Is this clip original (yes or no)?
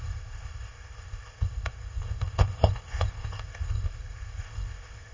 no